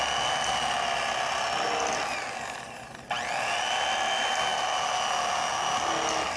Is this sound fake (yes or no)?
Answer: no